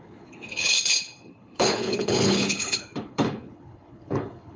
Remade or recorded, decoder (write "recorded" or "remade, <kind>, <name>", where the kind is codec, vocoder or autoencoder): remade, codec, HILCodec